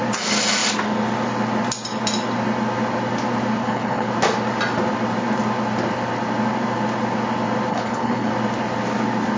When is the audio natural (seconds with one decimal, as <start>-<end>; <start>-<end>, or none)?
0.0-3.6; 4.1-7.7; 8.3-9.4